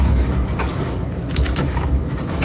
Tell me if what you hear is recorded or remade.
remade